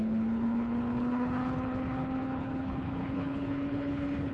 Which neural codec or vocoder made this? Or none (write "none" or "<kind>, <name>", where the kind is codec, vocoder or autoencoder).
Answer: codec, HILCodec